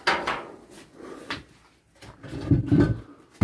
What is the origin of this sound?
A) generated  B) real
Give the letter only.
B